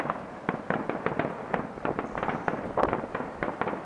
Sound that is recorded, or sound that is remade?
recorded